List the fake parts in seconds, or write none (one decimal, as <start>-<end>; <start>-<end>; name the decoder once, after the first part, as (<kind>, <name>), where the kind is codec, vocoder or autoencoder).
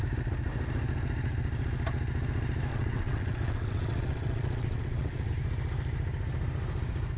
2.7-5.3 (vocoder, WaveNeXt)